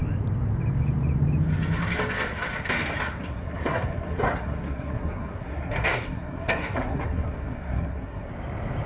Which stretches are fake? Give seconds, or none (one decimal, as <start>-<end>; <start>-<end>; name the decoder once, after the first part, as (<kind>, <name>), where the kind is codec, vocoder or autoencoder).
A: 3.2-8.3 (codec, SNAC)